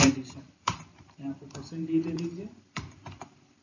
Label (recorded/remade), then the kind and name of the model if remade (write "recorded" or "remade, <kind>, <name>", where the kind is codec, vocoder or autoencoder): remade, vocoder, BigVGAN v2